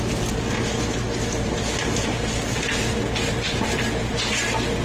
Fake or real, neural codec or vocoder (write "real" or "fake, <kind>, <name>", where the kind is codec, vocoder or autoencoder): real